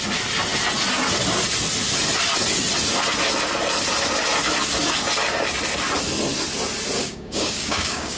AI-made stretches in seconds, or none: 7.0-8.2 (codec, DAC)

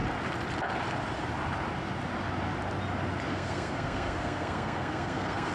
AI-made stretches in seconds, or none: 3.3-5.5 (codec, SNAC)

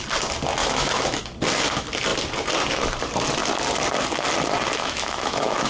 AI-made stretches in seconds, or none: 0.6-1.2 (autoencoder, DAC-VAE); 4.8-5.7

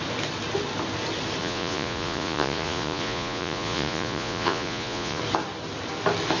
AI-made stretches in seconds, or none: 1.4-5.2 (vocoder, Vocos)

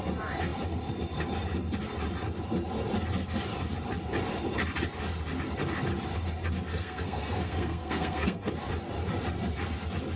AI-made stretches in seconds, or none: 6.7-8.5 (codec, SNAC)